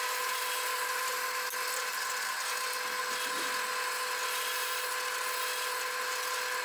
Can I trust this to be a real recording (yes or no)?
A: yes